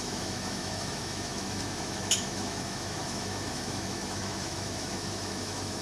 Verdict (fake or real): fake